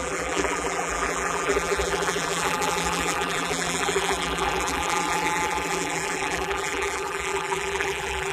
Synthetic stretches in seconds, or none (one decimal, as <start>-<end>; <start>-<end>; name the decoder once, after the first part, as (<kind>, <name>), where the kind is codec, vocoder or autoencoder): 0.0-8.3 (vocoder, BigVGAN v2)